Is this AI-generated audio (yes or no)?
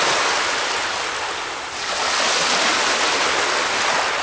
no